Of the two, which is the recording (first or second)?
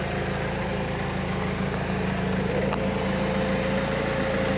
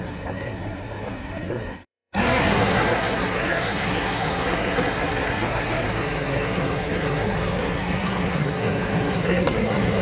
first